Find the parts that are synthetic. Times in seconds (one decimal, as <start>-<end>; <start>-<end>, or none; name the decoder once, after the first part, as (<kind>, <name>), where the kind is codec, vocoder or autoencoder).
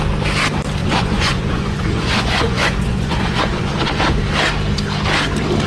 0.8-4.2 (vocoder, Vocos)